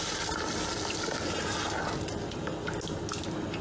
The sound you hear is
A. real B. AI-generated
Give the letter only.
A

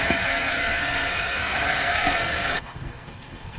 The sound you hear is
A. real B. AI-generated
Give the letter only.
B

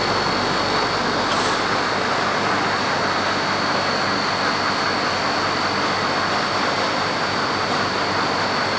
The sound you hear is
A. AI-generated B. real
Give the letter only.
B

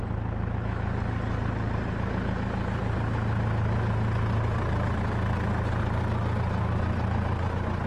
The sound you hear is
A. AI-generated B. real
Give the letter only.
B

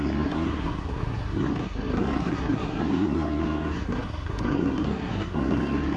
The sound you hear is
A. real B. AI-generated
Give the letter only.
B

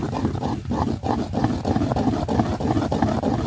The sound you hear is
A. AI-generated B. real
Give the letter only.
B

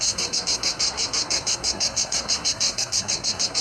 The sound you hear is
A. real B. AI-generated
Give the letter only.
B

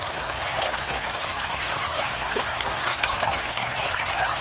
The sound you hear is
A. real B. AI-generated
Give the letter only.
B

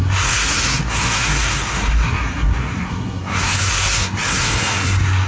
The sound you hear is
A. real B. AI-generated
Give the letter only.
B